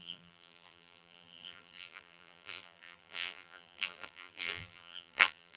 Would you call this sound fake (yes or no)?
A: yes